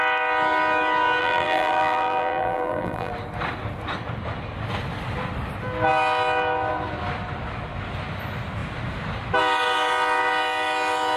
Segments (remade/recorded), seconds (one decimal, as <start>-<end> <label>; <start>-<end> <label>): 0.0-1.2 recorded; 1.2-3.1 remade; 3.1-11.2 recorded